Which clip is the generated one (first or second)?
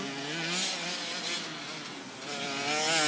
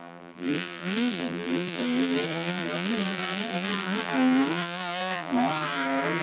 second